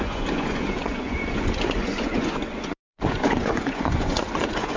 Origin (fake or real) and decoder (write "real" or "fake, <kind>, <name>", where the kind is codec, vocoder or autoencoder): fake, vocoder, Vocos